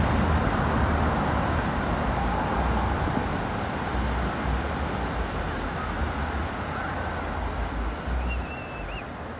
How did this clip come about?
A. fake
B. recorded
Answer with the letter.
B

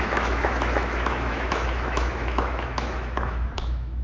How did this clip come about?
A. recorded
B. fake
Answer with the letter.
B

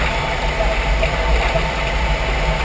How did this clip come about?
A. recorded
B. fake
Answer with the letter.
A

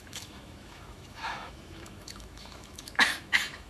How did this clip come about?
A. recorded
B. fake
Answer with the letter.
B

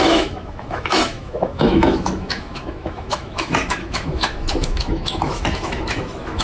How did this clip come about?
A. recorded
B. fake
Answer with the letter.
B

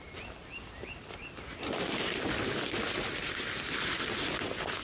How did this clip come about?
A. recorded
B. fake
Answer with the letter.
A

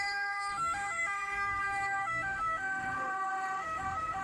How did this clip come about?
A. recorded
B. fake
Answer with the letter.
B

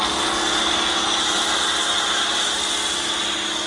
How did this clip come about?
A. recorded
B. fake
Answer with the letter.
A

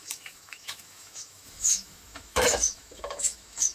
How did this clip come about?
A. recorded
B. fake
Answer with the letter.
B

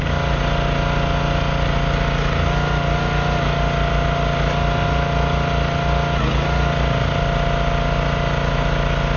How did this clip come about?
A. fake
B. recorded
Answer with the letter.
B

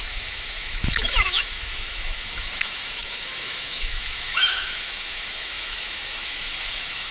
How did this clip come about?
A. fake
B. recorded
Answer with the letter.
A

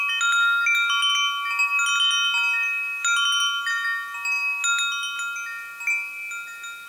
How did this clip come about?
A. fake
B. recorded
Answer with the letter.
B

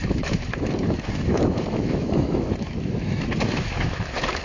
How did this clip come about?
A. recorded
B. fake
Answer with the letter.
B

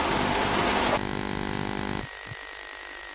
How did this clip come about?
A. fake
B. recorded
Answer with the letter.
B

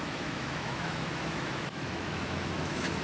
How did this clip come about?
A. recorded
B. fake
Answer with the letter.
B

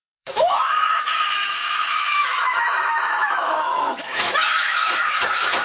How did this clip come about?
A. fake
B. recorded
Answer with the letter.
A